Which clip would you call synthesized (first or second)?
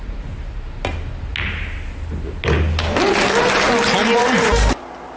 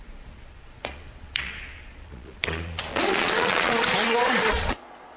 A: second